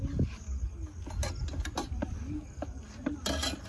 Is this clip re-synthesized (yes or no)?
no